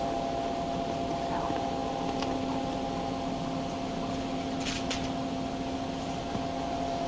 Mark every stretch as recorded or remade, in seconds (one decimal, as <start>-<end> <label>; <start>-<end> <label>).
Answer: 0.0-7.1 recorded